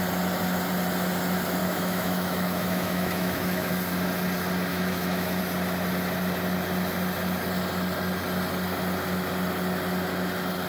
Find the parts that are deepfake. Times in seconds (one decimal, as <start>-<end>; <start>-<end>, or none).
1.6-3.7; 4.7-5.4